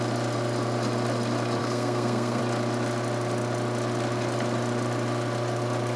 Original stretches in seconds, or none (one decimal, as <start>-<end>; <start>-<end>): 0.0-1.6; 2.4-6.0